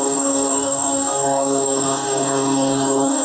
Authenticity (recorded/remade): remade